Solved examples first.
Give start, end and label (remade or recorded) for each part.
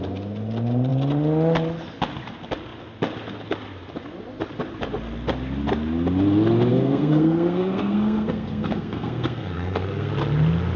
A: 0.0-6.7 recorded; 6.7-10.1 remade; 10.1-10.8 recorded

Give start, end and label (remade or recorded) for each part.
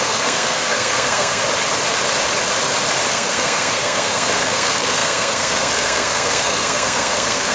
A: 0.0-1.4 remade; 1.4-3.1 recorded; 3.1-7.5 remade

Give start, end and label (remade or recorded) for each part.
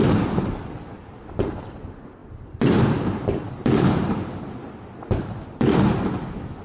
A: 0.0-6.6 recorded